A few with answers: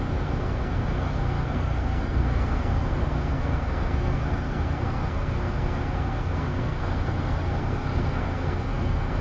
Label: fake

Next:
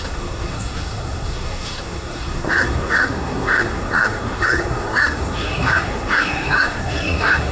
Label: fake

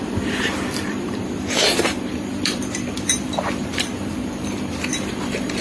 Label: fake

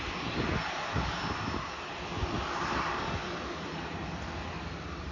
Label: real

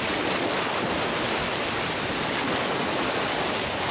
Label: real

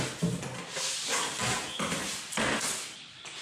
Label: real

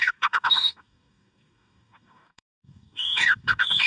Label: fake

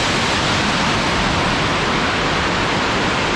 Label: real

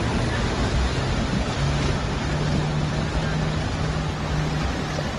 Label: real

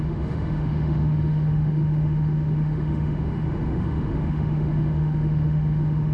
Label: fake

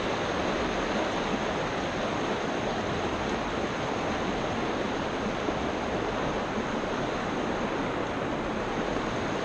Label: real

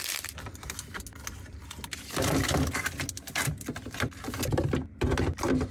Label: real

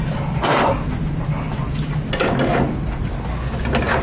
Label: real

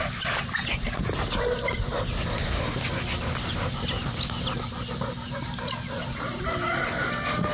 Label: real